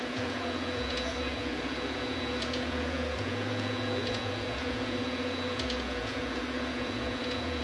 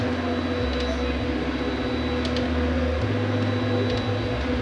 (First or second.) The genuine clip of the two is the second